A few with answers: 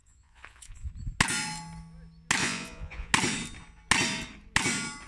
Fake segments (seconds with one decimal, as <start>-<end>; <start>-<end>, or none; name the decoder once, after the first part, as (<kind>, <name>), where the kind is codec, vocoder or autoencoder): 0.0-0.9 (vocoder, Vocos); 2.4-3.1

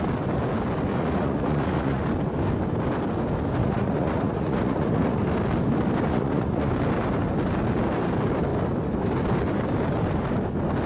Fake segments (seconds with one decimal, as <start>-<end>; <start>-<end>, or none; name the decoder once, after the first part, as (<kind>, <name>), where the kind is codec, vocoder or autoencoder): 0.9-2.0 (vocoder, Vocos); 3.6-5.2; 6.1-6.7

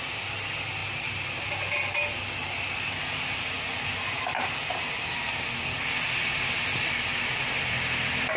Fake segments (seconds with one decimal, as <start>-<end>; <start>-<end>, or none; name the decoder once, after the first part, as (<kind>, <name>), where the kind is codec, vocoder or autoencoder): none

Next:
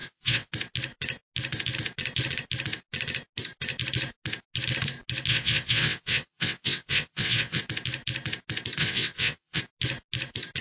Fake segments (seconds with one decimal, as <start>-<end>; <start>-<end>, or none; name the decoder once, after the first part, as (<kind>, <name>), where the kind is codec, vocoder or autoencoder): 0.0-0.5 (vocoder, WaveNeXt); 5.3-7.6; 8.8-9.6

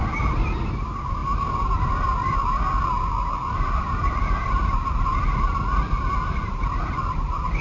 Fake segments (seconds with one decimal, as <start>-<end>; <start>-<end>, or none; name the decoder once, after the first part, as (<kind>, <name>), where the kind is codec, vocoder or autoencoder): none

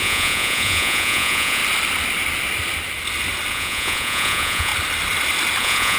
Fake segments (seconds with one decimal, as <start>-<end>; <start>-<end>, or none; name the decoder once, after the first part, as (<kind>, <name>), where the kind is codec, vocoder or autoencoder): 0.0-1.6 (vocoder, Vocos); 3.5-4.7; 5.6-6.0

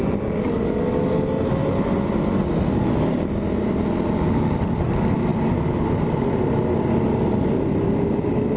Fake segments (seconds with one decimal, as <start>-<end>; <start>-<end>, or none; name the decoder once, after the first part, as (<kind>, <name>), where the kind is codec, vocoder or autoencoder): none